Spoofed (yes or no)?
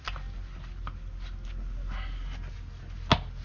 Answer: no